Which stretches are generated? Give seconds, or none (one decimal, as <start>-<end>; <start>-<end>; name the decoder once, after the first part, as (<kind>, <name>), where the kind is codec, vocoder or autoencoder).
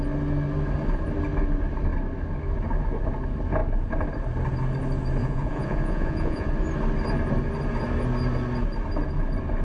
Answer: 5.2-6.5 (vocoder, Vocos)